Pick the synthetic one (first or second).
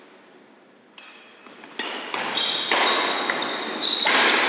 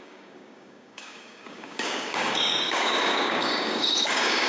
second